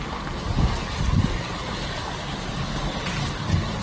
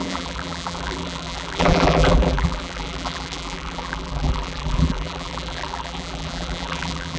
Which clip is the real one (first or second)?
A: first